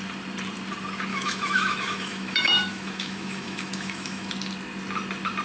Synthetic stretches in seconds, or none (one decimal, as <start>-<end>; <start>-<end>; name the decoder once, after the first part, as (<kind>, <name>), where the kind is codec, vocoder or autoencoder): 1.1-4.3 (autoencoder, DAC-VAE)

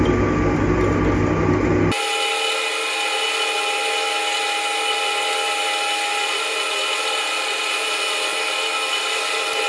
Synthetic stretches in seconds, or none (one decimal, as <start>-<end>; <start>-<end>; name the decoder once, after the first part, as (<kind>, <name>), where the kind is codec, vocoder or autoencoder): none